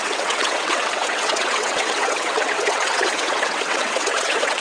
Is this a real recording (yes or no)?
no